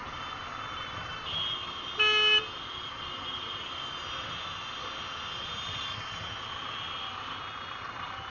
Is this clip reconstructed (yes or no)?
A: no